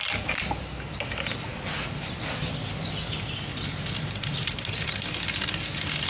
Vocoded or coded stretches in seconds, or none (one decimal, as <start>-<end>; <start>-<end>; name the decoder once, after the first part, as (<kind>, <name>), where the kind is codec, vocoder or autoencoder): 3.5-4.7 (vocoder, BigVGAN v2)